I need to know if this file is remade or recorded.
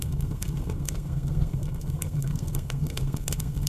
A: remade